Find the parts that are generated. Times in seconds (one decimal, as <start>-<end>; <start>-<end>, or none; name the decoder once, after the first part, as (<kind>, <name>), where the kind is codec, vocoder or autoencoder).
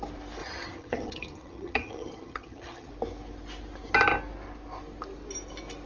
0.4-2.9 (vocoder, HiFi-GAN)